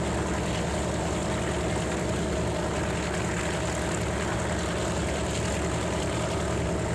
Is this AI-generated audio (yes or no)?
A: no